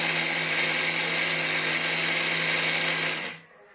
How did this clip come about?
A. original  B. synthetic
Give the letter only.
A